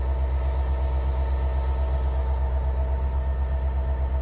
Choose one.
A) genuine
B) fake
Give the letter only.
A